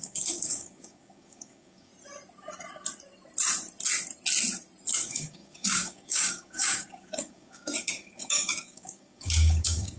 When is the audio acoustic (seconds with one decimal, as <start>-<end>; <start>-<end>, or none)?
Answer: 1.9-4.9